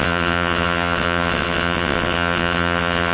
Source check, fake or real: fake